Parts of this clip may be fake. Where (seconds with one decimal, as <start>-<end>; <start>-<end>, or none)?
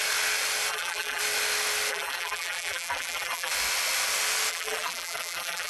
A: 0.7-1.2; 1.9-3.5; 4.5-5.7